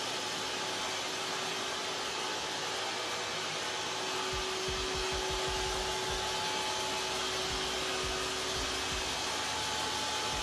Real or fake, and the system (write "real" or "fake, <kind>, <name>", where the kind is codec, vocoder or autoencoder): real